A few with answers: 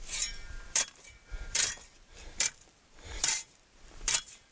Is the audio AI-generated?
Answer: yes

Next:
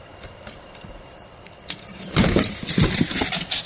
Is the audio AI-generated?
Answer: yes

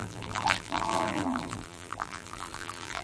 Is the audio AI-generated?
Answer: yes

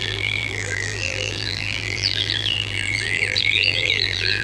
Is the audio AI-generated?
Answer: yes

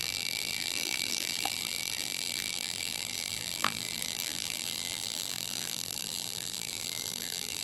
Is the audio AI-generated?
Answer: yes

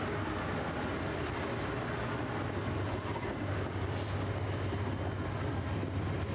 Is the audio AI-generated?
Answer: no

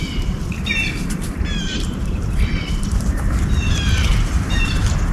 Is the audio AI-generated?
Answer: yes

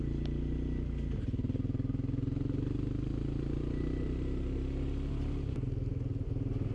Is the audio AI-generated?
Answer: no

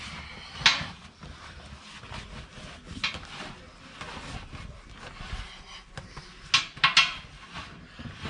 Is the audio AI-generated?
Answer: no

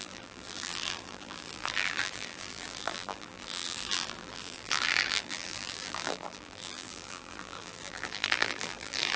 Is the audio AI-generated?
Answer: yes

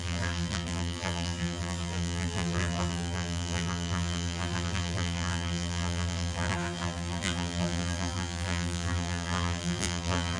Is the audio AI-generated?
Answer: yes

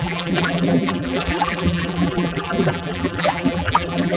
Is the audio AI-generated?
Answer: yes